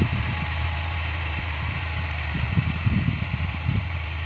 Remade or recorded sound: remade